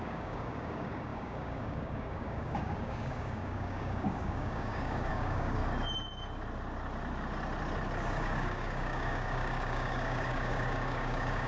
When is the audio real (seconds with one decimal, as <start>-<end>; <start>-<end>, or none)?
5.6-8.1